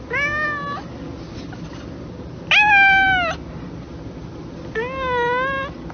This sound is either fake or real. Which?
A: real